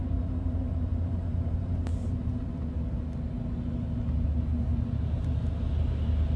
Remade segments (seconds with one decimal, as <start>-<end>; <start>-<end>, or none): 1.9-2.5